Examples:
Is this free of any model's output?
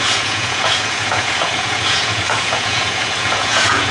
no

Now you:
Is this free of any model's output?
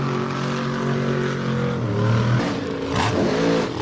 yes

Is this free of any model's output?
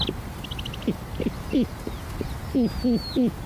yes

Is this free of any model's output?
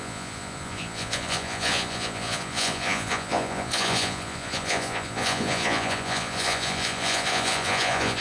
no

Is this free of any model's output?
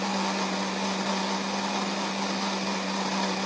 yes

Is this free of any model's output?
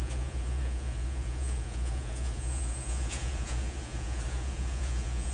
no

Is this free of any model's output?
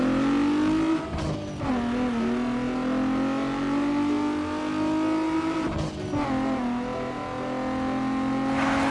yes